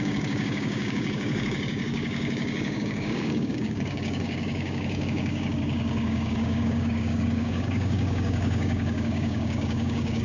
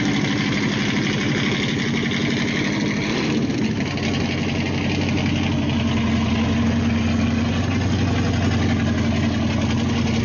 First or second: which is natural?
second